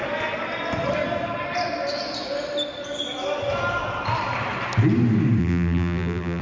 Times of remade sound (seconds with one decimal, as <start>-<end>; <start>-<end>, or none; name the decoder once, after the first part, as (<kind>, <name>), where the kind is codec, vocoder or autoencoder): 5.4-6.4 (vocoder, BigVGAN v2)